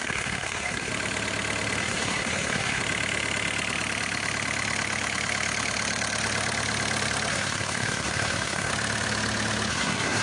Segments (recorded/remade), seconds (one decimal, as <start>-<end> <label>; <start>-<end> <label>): 0.0-0.9 remade; 0.9-1.8 recorded; 1.8-2.8 remade; 2.8-7.3 recorded; 7.3-8.7 remade; 8.7-9.7 recorded; 9.7-10.2 remade